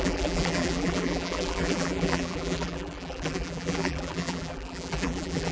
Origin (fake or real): fake